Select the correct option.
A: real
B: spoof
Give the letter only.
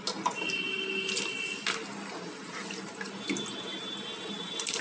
A